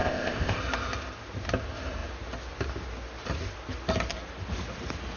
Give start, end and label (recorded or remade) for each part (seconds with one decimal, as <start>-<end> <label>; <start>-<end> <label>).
0.0-0.6 remade; 0.6-5.2 recorded